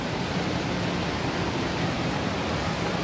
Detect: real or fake fake